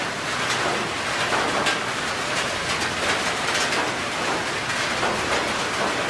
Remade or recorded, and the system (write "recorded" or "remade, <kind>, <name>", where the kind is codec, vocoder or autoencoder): recorded